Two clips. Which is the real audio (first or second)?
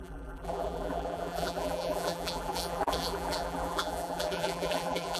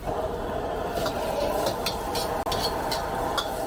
second